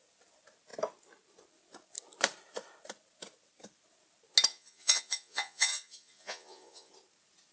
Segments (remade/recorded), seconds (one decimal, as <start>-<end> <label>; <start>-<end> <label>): 0.0-4.5 recorded; 4.5-6.9 remade; 6.9-7.5 recorded